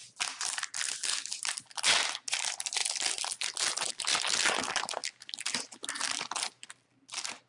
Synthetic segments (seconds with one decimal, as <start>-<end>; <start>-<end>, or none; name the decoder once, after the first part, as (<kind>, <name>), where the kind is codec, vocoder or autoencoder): none